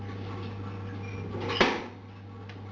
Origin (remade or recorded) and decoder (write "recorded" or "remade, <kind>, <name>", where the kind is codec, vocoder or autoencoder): recorded